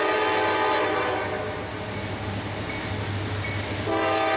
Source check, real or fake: real